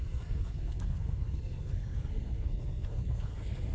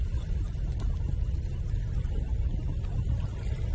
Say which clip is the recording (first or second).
second